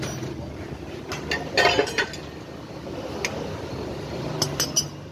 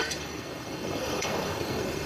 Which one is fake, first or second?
second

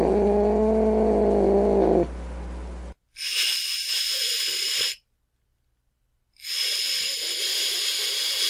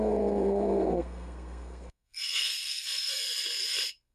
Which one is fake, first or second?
second